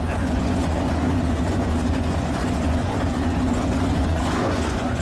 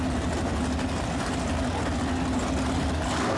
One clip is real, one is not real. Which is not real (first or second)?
first